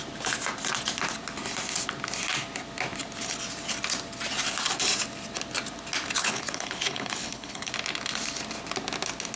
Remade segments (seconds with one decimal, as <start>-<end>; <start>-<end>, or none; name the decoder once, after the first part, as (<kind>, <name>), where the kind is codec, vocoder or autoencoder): 6.2-7.7 (codec, HILCodec)